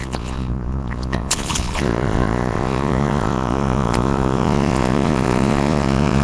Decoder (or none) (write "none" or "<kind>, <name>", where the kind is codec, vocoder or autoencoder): vocoder, Vocos